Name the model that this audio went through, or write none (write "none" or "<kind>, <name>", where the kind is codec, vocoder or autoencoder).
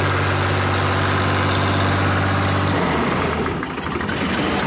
none